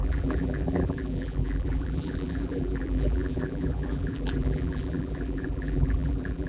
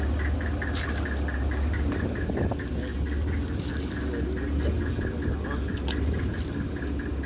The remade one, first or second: first